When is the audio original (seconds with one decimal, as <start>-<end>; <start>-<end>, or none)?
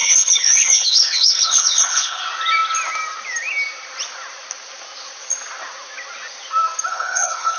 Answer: 2.2-6.9